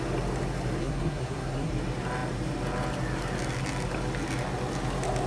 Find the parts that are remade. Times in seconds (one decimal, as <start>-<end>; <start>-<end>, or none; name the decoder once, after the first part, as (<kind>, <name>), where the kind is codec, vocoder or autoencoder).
0.8-1.7 (codec, SNAC)